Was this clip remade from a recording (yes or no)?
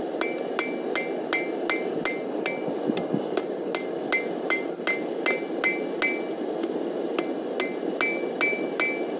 no